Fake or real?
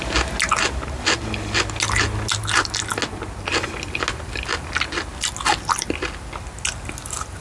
real